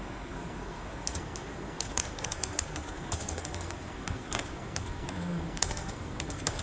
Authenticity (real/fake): fake